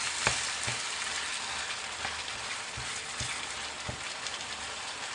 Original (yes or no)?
yes